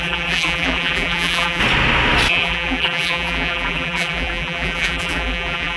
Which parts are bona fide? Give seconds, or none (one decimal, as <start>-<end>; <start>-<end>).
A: 1.6-2.3